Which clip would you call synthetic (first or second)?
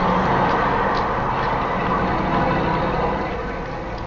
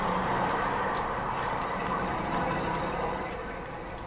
second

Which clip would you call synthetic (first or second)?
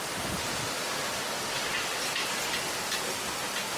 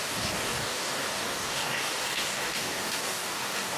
second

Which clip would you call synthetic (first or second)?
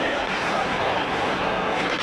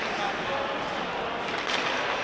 first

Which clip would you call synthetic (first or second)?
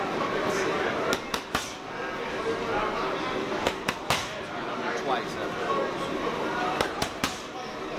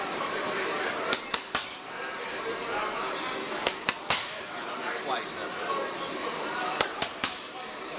second